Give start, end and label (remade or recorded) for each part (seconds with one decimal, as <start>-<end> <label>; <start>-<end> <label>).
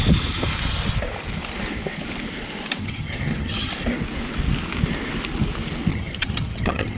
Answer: 0.0-2.8 recorded; 2.8-3.7 remade; 3.7-5.9 recorded; 5.9-7.0 remade